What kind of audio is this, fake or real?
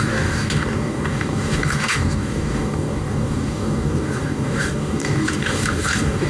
fake